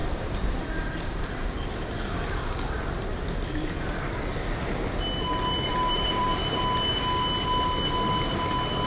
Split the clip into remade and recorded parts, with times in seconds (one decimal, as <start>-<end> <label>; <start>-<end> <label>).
0.0-1.2 remade; 1.2-5.7 recorded; 5.7-6.6 remade; 6.6-8.9 recorded

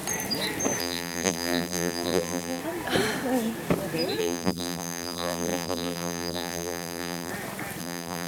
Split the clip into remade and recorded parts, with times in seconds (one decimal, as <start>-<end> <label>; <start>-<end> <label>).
0.0-0.8 recorded; 0.8-2.6 remade; 2.6-4.2 recorded; 4.2-7.3 remade; 7.3-7.8 recorded; 7.8-8.3 remade

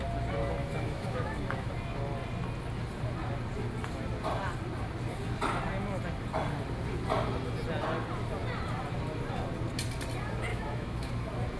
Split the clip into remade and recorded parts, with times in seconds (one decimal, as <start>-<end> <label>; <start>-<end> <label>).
0.0-0.6 recorded; 0.6-1.7 remade; 1.7-10.5 recorded; 10.5-11.1 remade; 11.1-11.6 recorded

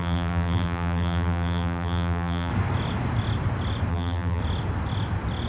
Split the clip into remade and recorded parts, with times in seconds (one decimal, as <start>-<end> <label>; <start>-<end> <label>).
0.0-2.5 remade; 2.5-3.9 recorded; 3.9-4.4 remade; 4.4-5.5 recorded